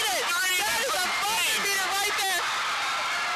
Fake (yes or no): no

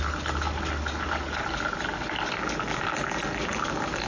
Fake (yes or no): no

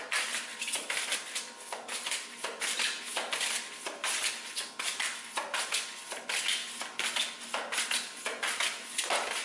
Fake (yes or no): no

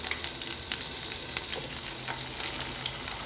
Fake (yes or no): no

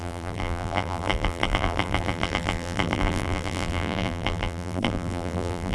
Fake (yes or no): yes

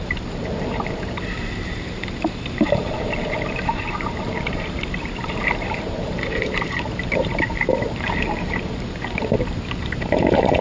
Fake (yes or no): yes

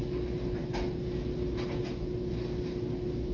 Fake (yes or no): no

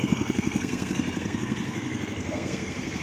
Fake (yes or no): yes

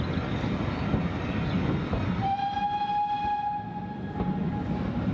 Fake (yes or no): no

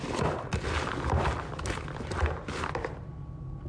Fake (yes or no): no